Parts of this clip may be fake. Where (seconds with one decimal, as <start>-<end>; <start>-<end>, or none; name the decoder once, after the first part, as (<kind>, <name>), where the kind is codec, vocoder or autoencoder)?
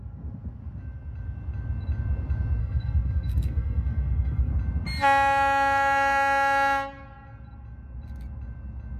2.6-4.5 (codec, SNAC)